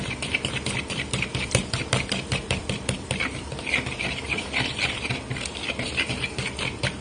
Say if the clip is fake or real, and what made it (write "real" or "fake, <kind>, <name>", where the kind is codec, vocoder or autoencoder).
fake, vocoder, BigVGAN v2